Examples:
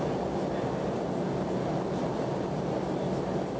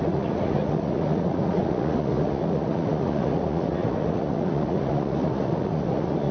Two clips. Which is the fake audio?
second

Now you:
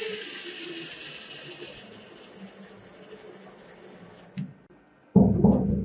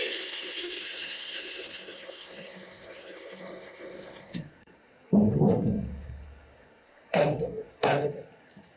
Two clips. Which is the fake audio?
second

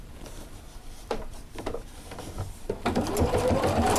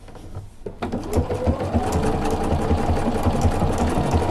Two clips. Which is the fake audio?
first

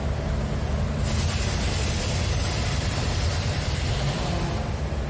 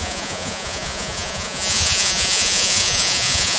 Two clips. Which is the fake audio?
second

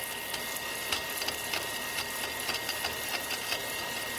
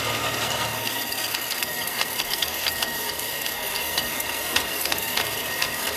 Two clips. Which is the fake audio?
second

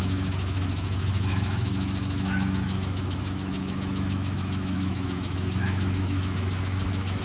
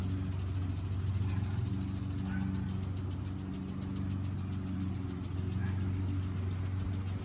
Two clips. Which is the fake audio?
first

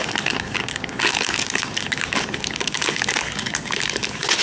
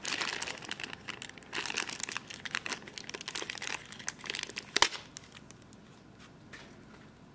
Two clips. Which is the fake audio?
first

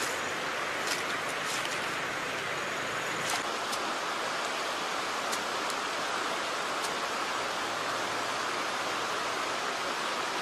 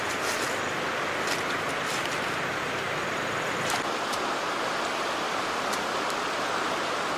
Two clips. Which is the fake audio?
second